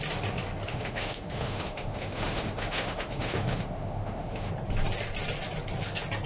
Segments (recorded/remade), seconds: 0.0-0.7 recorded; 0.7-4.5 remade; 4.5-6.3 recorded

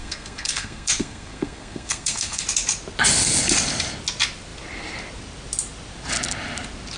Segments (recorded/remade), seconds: 0.0-2.4 remade; 2.4-7.0 recorded